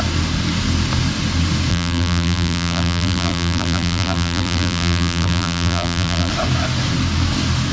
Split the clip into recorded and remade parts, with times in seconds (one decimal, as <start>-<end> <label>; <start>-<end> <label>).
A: 0.0-1.7 recorded; 1.7-6.3 remade; 6.3-7.7 recorded